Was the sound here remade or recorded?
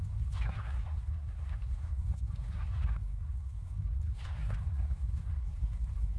remade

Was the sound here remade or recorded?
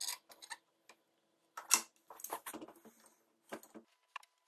recorded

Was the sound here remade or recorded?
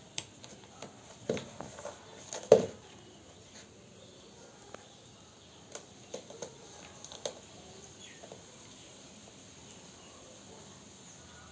recorded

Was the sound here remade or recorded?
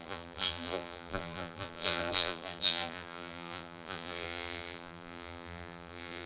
remade